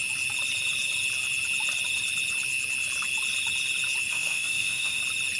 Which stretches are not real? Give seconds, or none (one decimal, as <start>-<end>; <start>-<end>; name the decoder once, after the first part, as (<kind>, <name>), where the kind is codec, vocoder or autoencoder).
4.1-5.0 (autoencoder, DAC-VAE)